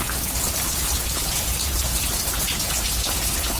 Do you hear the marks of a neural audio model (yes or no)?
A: yes